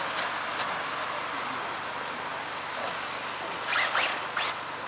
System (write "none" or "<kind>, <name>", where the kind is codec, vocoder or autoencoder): none